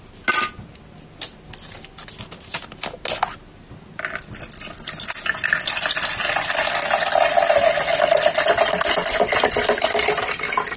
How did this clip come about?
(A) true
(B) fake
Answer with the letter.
A